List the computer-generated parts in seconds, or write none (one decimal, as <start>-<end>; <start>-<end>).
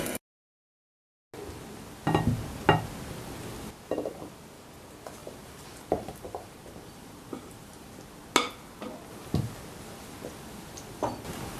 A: 5.2-7.9